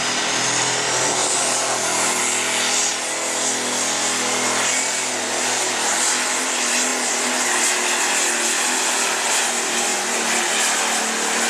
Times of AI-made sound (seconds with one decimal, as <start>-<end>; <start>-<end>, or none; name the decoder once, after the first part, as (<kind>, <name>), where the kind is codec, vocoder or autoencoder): none